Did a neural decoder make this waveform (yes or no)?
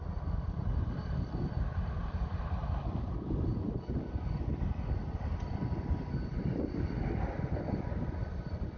no